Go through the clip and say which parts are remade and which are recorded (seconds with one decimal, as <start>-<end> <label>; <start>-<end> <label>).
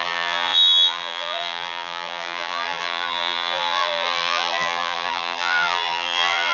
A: 0.0-6.5 remade